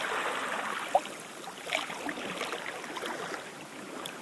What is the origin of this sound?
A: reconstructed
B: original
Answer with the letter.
B